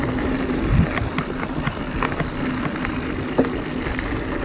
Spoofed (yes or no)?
no